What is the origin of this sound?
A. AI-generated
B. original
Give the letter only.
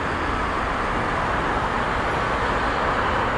B